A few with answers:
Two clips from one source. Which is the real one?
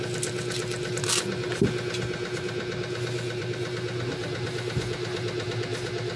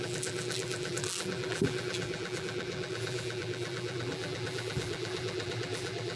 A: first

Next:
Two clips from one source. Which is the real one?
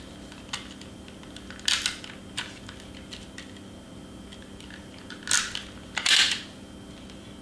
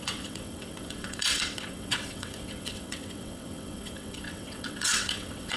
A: first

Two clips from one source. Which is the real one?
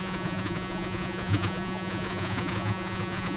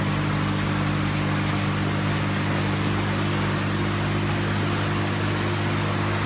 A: second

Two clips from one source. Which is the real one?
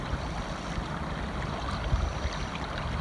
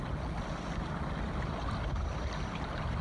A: second